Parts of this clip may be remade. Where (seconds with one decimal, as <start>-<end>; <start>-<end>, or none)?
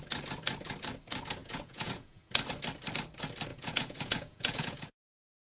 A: 1.4-2.3; 3.5-5.1